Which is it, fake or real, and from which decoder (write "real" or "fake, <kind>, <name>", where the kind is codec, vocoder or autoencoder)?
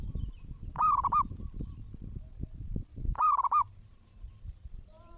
real